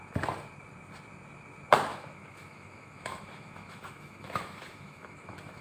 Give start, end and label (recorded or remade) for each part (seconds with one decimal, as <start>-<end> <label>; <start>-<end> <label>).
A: 0.0-1.9 recorded; 1.9-5.6 remade